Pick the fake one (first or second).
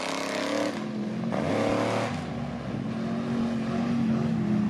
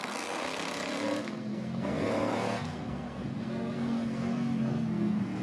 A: second